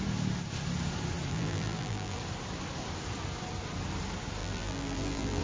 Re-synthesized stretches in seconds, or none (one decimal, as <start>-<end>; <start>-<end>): 1.3-2.2; 4.4-5.4